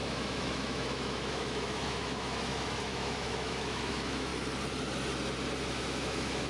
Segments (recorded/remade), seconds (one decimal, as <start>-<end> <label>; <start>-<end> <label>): 0.0-4.3 remade; 4.3-5.7 recorded; 5.7-6.5 remade